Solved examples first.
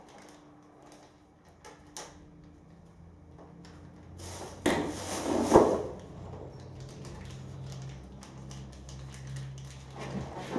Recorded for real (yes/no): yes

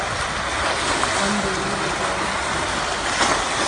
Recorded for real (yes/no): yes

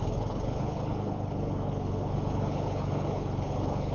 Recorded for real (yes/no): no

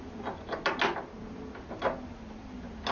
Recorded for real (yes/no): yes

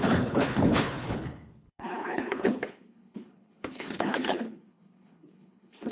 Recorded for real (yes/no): no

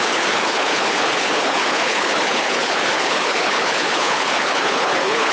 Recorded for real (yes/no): no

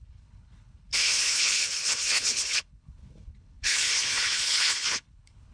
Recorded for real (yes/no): no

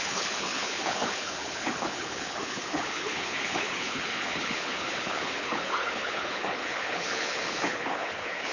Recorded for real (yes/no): no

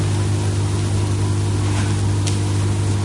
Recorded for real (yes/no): yes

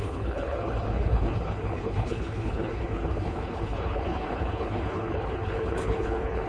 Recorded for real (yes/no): no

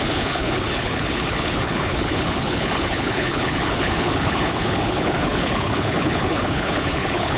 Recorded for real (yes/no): no